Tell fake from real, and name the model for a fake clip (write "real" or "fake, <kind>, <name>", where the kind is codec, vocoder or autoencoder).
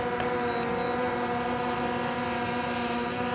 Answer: real